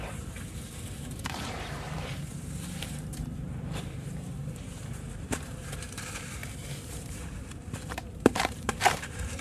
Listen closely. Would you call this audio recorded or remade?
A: remade